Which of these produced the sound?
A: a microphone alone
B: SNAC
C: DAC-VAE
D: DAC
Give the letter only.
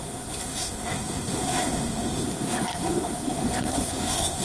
B